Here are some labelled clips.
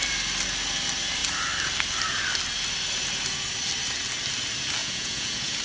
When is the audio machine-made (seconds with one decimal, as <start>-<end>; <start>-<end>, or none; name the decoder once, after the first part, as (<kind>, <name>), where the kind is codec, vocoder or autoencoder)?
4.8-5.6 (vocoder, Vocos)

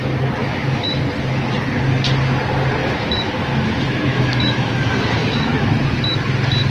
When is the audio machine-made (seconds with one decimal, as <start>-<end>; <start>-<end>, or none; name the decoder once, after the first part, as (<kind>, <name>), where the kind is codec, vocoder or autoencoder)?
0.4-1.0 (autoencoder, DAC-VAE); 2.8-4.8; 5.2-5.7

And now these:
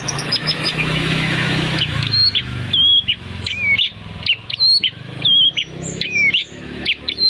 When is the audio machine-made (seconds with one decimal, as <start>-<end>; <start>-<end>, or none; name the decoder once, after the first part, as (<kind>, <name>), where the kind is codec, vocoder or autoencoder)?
0.0-3.9 (autoencoder, DAC-VAE); 4.8-7.3